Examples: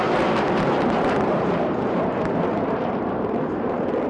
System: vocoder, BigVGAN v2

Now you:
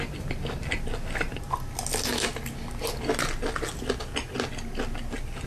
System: none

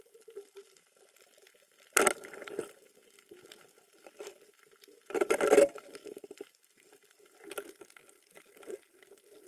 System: none